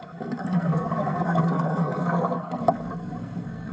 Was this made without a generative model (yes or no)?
no